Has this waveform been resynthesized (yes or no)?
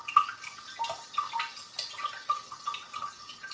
no